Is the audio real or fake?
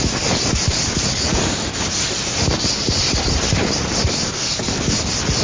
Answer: real